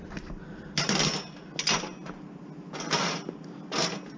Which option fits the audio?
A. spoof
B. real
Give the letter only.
B